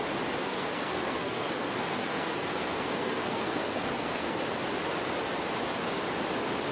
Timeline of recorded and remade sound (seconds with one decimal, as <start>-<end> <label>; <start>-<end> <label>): 0.0-0.4 recorded; 0.4-4.4 remade; 4.4-6.7 recorded